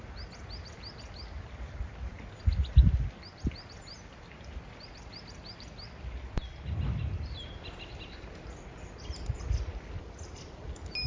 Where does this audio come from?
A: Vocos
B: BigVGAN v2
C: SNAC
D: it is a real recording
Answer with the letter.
D